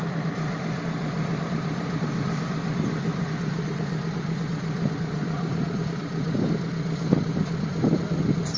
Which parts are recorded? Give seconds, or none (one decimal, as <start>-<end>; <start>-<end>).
0.0-1.3; 2.2-3.1; 5.8-8.6